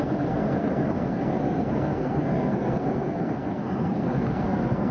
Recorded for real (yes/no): no